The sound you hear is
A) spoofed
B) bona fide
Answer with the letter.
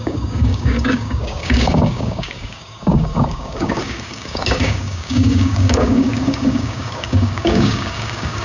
A